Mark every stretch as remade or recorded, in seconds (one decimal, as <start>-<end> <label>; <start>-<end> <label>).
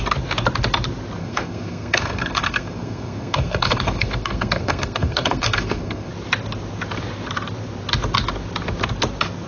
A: 0.0-1.2 recorded; 1.2-6.1 remade; 6.1-9.5 recorded